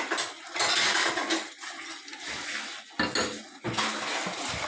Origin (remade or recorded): recorded